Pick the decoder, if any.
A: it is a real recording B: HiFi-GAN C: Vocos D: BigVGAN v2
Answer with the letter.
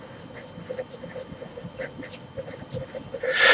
A